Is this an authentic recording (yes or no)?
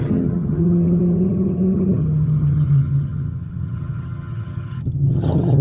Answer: no